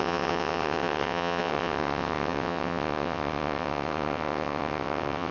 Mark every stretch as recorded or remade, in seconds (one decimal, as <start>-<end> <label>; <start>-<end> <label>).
0.0-5.3 remade